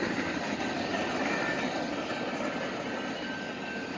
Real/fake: real